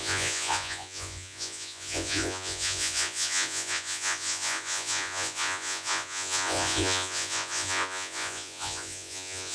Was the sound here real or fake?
fake